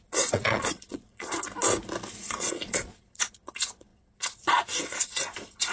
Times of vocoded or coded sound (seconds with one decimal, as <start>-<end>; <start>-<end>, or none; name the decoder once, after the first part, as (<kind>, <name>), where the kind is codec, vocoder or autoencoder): 0.0-1.3 (vocoder, Vocos); 2.2-5.7